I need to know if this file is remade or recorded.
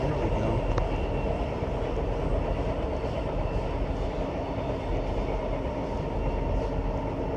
recorded